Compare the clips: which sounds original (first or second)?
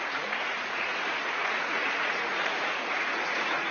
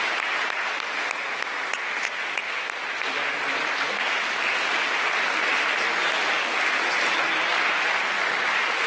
second